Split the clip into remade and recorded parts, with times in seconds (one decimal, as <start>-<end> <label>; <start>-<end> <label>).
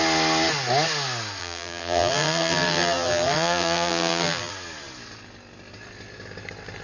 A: 0.0-1.4 recorded; 1.4-4.5 remade; 4.5-6.8 recorded